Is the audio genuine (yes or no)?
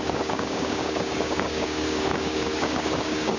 no